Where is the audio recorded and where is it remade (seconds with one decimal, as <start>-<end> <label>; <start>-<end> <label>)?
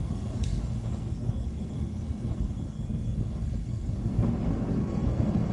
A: 0.0-5.5 remade